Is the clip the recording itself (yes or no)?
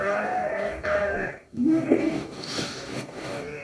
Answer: no